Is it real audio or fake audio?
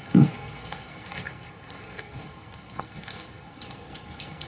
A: fake